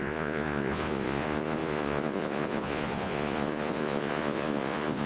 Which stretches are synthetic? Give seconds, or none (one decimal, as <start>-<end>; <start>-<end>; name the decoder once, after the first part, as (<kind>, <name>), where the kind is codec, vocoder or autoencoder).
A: 0.0-5.1 (vocoder, Vocos)